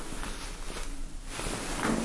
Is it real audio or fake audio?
real